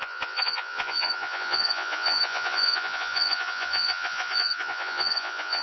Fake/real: fake